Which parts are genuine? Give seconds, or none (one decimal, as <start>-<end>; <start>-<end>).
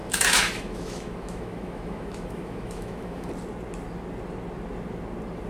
3.3-5.5